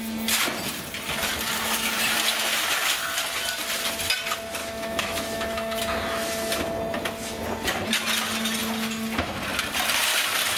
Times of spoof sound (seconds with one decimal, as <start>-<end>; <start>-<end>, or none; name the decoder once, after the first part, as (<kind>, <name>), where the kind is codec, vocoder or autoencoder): 4.6-5.8 (autoencoder, DAC-VAE)